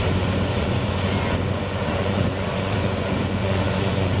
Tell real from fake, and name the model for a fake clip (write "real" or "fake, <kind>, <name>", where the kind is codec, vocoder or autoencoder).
fake, vocoder, Vocos